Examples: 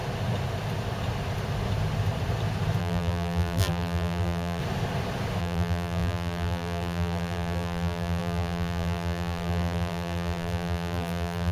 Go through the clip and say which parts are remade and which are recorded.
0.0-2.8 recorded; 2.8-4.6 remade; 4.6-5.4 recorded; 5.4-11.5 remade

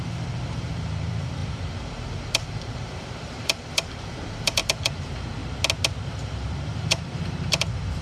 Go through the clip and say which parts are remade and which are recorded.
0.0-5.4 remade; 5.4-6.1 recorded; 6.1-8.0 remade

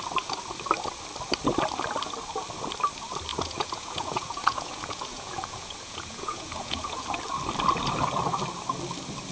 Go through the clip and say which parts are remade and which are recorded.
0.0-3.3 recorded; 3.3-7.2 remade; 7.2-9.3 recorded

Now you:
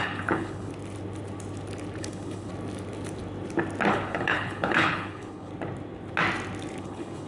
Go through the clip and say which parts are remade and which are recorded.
0.0-0.7 remade; 0.7-2.0 recorded; 2.0-2.5 remade; 2.5-3.9 recorded; 3.9-5.5 remade; 5.5-6.8 recorded; 6.8-7.3 remade